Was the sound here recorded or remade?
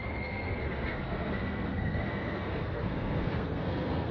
remade